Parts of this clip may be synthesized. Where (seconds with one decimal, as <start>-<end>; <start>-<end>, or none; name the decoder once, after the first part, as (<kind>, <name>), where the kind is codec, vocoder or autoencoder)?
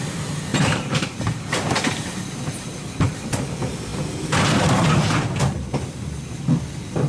0.5-1.7 (vocoder, BigVGAN v2)